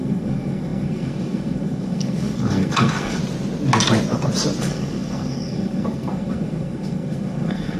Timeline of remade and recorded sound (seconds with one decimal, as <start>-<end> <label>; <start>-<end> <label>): 0.0-3.2 remade; 3.2-4.6 recorded; 4.6-7.8 remade